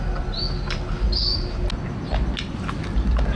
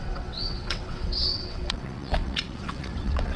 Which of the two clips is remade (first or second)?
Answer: second